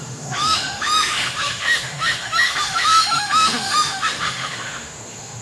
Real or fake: fake